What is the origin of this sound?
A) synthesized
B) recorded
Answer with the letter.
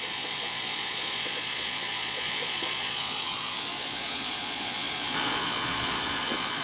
A